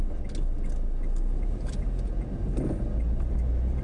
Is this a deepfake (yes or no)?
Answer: no